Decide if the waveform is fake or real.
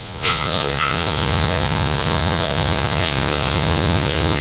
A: fake